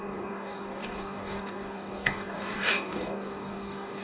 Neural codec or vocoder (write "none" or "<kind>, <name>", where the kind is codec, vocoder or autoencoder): codec, DAC